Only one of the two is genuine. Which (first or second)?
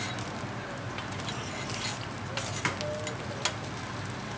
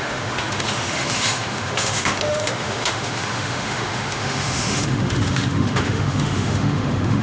first